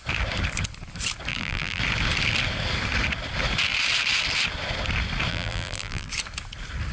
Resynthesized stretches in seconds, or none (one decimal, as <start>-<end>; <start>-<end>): 1.3-1.8; 5.3-6.1